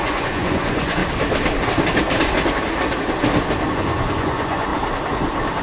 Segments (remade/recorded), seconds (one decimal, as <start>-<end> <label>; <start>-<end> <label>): 0.0-1.0 remade; 1.0-3.7 recorded; 3.7-4.7 remade; 4.7-5.6 recorded